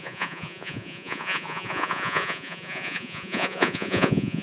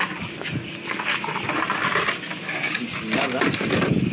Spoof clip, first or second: first